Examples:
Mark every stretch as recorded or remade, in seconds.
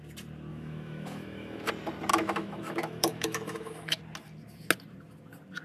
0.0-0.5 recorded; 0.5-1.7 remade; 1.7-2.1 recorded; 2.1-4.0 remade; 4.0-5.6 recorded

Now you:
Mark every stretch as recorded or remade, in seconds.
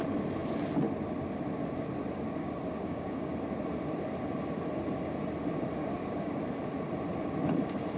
0.0-2.4 recorded; 2.4-3.3 remade; 3.3-5.8 recorded; 5.8-6.4 remade; 6.4-8.0 recorded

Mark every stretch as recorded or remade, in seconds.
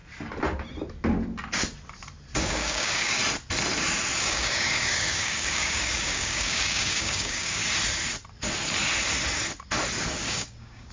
0.0-2.4 recorded; 2.4-3.2 remade; 3.2-4.2 recorded; 4.2-7.6 remade; 7.6-10.3 recorded; 10.3-10.9 remade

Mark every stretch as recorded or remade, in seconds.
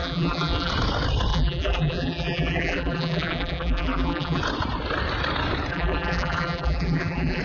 0.0-0.7 remade; 0.7-1.3 recorded; 1.3-4.4 remade; 4.4-5.7 recorded; 5.7-7.4 remade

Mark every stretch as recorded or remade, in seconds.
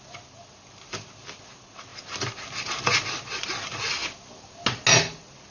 0.0-5.5 recorded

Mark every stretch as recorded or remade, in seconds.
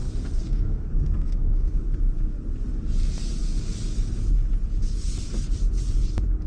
0.0-2.0 remade; 2.0-6.5 recorded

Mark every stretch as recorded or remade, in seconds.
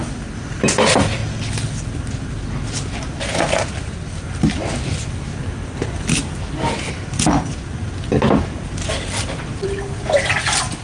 0.0-1.2 remade; 1.2-2.7 recorded; 2.7-5.0 remade; 5.0-8.1 recorded; 8.1-10.8 remade